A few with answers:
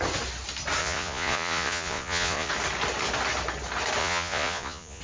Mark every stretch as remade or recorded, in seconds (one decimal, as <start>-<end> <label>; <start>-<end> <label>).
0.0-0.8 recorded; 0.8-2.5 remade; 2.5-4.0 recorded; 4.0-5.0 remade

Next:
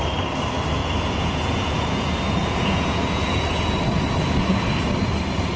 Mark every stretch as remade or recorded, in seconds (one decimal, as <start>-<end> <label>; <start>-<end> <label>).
0.0-0.8 recorded; 0.8-3.8 remade; 3.8-5.6 recorded

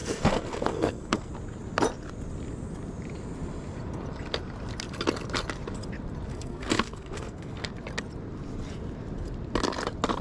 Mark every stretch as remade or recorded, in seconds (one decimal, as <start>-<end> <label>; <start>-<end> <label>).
0.0-1.3 remade; 1.3-6.3 recorded; 6.3-7.7 remade; 7.7-10.2 recorded